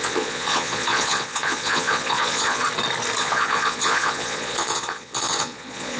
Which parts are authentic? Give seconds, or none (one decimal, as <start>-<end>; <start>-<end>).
2.6-3.2